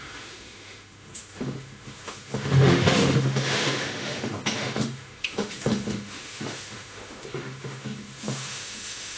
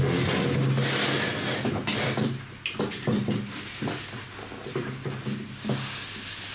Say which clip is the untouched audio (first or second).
second